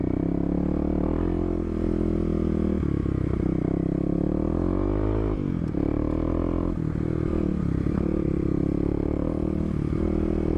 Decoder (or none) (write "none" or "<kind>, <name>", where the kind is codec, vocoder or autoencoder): none